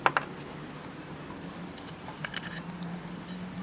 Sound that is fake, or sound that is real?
real